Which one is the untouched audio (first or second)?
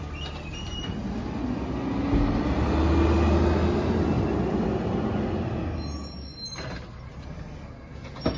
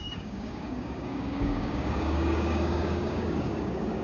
first